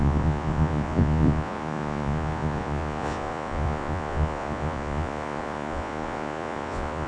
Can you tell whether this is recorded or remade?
remade